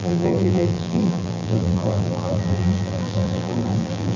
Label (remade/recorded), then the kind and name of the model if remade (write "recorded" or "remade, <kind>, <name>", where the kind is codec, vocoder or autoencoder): remade, vocoder, BigVGAN v2